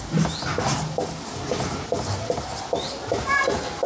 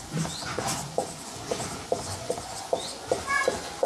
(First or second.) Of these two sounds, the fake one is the second